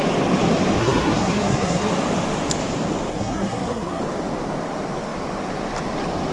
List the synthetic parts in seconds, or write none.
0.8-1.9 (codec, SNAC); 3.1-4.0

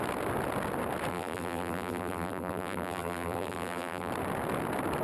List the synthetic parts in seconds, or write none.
1.1-4.1 (vocoder, BigVGAN v2)